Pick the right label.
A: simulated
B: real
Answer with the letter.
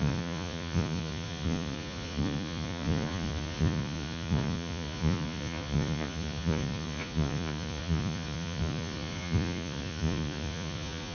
A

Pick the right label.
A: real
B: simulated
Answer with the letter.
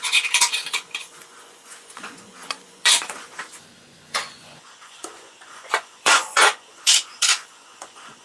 B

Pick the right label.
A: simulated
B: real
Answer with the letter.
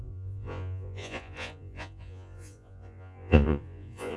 A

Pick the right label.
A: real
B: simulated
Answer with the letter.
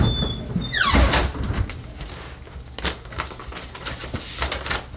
A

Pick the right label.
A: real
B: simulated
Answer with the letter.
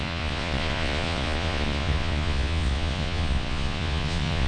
B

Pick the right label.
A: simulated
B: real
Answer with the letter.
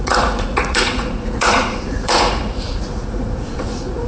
A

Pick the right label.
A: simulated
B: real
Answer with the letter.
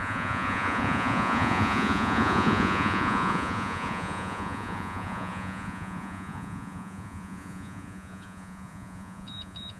A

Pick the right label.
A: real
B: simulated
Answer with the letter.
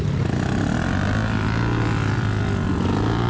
A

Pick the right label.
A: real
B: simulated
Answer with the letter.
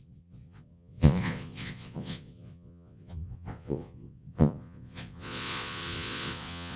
B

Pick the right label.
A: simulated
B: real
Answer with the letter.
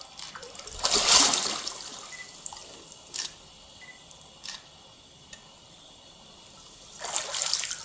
B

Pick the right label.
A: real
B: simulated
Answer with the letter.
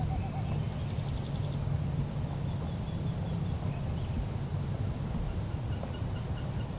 A